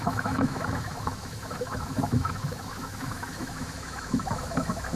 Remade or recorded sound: remade